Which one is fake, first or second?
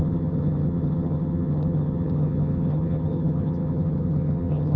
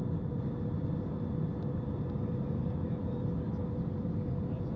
first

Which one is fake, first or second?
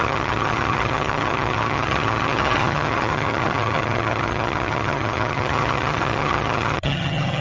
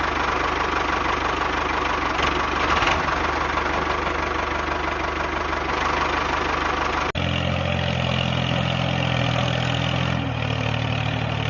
first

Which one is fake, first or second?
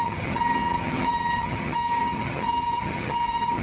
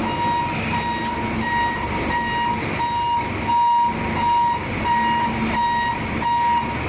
first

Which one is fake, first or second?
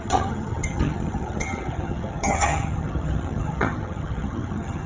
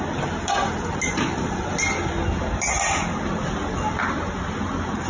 first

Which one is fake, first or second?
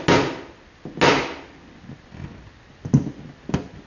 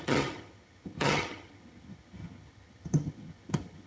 second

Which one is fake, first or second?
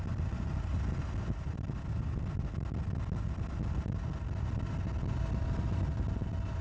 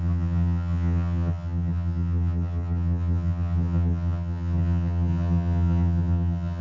second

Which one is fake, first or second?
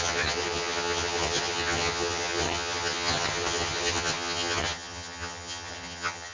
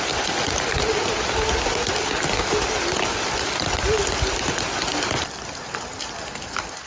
first